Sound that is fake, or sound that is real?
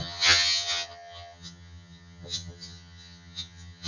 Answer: fake